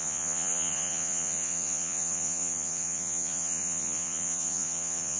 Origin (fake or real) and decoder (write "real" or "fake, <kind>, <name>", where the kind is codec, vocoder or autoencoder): fake, vocoder, Vocos